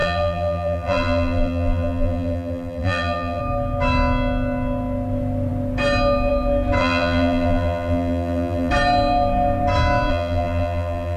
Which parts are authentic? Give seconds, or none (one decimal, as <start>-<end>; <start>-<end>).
3.4-6.8; 8.7-10.1